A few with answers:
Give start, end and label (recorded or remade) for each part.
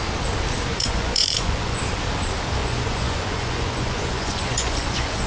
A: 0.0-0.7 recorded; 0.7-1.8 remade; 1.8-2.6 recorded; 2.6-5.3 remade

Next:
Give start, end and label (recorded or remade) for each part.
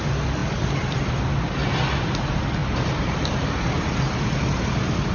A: 0.0-5.1 recorded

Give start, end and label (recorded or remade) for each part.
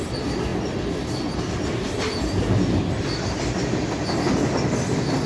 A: 0.0-5.3 recorded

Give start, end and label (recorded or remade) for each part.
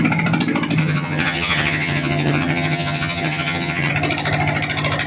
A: 0.0-0.8 recorded; 0.8-3.9 remade; 3.9-5.1 recorded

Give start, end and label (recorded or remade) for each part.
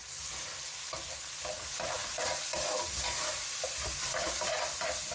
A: 0.0-5.1 recorded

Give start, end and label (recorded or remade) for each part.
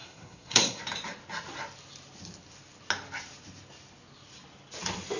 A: 0.0-0.8 remade; 0.8-5.2 recorded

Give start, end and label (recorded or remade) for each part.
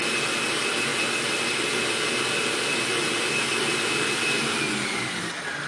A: 0.0-5.7 recorded